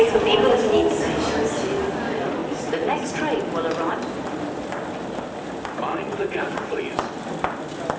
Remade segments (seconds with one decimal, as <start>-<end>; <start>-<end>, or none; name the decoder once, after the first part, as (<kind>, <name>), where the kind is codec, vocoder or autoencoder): 2.4-3.1 (vocoder, Vocos); 5.9-6.8